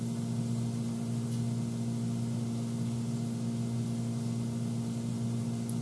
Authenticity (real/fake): real